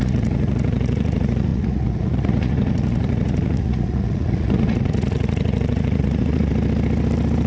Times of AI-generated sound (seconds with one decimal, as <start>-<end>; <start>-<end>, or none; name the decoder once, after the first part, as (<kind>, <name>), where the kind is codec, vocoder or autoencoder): 0.0-6.5 (vocoder, Vocos)